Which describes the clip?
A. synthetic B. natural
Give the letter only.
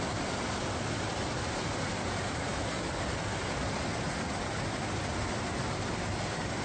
B